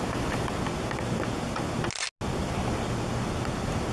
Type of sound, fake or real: real